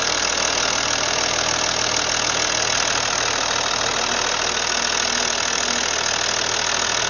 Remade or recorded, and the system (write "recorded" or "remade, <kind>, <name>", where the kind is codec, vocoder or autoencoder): recorded